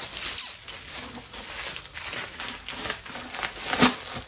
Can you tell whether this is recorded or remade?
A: recorded